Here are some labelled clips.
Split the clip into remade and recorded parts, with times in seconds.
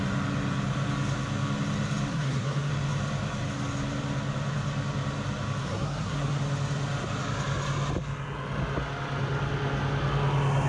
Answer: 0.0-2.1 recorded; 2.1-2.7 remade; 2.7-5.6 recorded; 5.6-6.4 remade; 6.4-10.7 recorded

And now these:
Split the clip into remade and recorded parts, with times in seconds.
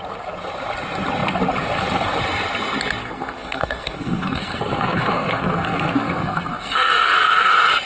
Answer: 0.0-3.0 recorded; 3.0-7.5 remade; 7.5-7.9 recorded